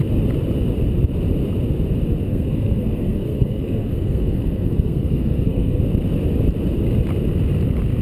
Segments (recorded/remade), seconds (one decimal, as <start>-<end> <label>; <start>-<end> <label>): 0.0-2.3 recorded; 2.3-5.8 remade; 5.8-8.0 recorded